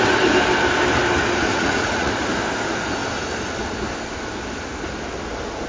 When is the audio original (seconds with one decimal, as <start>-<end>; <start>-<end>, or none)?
0.0-1.5; 2.1-5.7